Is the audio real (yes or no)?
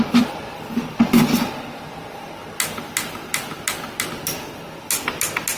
yes